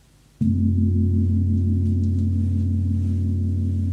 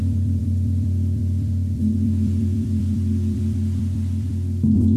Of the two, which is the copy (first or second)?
second